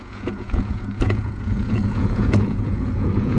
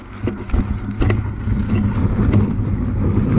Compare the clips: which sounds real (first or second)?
second